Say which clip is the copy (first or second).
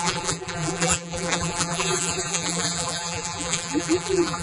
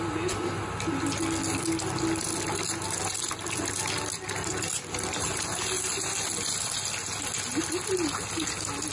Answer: first